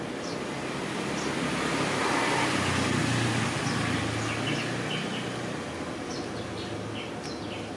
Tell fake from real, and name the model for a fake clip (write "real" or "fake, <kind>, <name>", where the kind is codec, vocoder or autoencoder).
real